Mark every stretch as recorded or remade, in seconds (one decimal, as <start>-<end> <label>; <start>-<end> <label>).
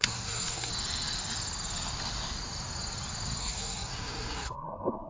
0.0-0.7 remade; 0.7-3.4 recorded; 3.4-5.1 remade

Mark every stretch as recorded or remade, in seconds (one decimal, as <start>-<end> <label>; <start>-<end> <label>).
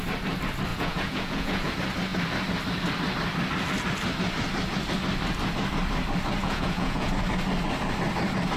0.0-0.7 recorded; 0.7-1.7 remade; 1.7-6.4 recorded; 6.4-7.1 remade; 7.1-8.6 recorded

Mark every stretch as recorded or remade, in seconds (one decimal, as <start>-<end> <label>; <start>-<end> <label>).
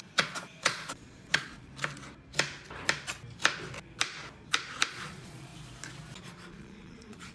0.0-1.7 remade; 1.7-4.9 recorded; 4.9-5.5 remade; 5.5-6.2 recorded; 6.2-7.3 remade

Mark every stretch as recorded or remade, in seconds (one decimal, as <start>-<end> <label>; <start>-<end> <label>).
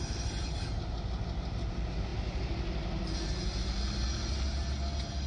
0.0-5.3 recorded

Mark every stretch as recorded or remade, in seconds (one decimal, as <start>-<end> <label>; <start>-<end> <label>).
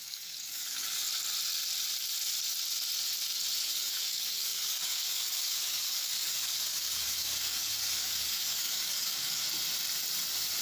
0.0-1.0 remade; 1.0-3.6 recorded; 3.6-9.4 remade; 9.4-10.6 recorded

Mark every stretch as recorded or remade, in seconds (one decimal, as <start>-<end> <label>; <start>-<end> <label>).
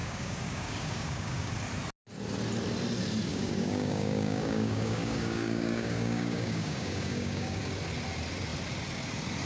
0.0-1.5 remade; 1.5-3.3 recorded; 3.3-7.6 remade; 7.6-9.5 recorded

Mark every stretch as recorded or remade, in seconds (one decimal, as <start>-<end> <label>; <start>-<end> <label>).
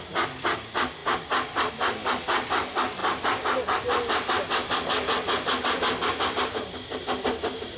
0.0-7.8 recorded